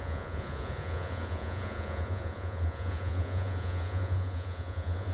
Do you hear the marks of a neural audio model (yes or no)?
yes